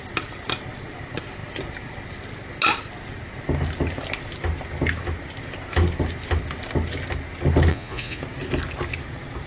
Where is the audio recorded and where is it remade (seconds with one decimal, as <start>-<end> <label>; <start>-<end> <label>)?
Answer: 0.0-7.7 recorded; 7.7-8.2 remade; 8.2-9.5 recorded